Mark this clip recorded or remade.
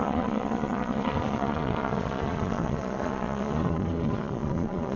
remade